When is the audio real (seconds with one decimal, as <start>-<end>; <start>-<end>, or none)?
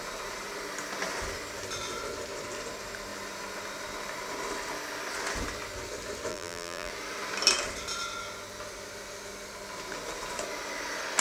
0.0-6.3; 6.9-11.2